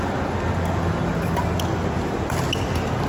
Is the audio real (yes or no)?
yes